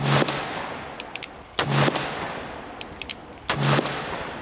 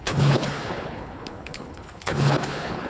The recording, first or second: first